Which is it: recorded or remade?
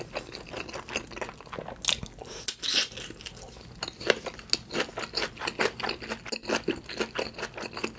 recorded